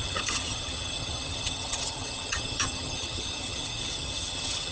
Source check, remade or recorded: remade